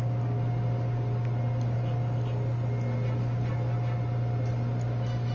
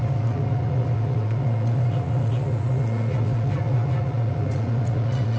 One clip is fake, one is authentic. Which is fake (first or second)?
second